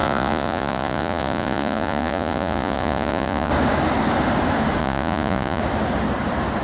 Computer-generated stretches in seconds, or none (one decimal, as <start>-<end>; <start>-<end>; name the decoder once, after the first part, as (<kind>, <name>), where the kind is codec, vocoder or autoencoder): 0.0-3.5 (vocoder, Vocos); 4.8-5.6

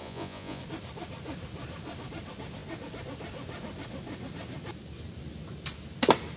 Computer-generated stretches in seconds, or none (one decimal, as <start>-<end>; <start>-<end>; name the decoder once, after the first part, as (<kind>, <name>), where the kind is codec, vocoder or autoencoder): 0.0-0.6 (vocoder, Vocos)

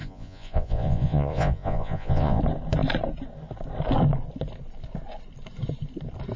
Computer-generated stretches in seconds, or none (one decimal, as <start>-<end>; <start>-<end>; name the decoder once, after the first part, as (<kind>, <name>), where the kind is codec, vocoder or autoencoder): 0.0-2.4 (vocoder, Vocos)

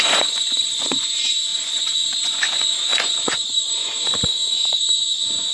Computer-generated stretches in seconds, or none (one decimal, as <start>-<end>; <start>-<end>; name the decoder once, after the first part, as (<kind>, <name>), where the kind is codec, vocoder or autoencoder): 0.0-5.5 (vocoder, Vocos)

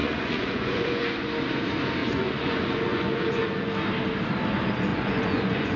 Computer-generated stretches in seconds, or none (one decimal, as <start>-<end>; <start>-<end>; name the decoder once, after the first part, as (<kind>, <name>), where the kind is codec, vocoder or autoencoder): 0.0-1.3 (vocoder, Vocos); 2.0-3.7; 4.9-5.8

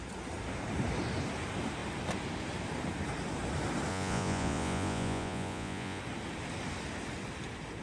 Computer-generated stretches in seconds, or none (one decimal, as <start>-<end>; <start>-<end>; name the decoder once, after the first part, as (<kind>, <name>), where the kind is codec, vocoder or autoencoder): 3.9-6.0 (vocoder, Vocos)

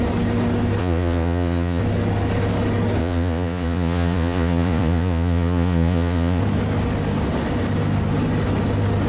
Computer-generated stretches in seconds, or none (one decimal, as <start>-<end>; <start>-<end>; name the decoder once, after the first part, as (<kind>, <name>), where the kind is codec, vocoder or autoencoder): 0.8-1.8 (vocoder, Vocos); 3.0-6.4